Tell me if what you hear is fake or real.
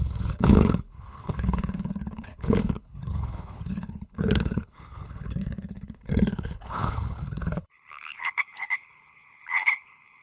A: fake